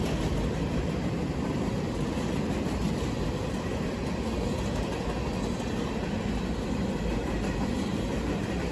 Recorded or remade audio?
recorded